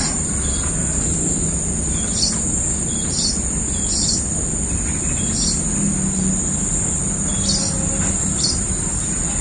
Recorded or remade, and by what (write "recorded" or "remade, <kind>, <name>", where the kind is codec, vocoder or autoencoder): recorded